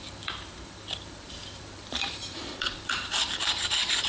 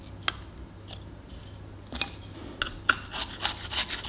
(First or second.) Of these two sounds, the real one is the second